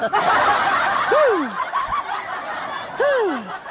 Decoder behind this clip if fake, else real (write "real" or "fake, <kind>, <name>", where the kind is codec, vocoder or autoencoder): real